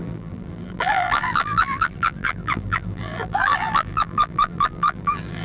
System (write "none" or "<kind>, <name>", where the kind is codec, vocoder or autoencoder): vocoder, BigVGAN v2